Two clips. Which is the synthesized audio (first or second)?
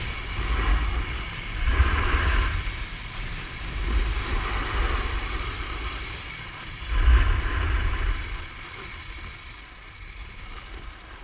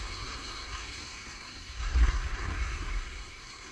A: second